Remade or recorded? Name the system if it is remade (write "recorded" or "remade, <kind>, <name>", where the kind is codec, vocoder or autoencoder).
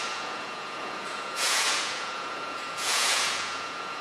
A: remade, vocoder, Vocos